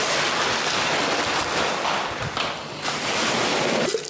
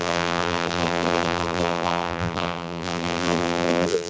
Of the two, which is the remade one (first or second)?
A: second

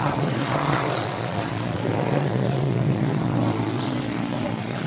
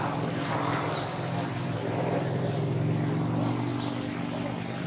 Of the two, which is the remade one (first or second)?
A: first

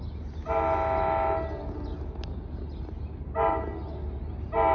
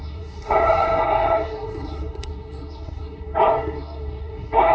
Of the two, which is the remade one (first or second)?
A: second